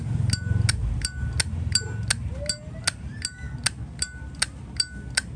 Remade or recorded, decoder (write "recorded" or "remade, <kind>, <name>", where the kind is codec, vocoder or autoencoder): recorded